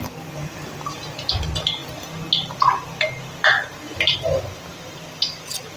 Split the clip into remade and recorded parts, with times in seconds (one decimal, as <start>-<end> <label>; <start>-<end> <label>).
0.0-0.4 recorded; 0.4-1.4 remade; 1.4-5.8 recorded